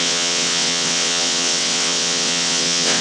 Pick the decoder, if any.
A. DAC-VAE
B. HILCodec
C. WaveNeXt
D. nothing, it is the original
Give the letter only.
C